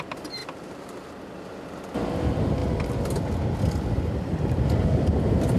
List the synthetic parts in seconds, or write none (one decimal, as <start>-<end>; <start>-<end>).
none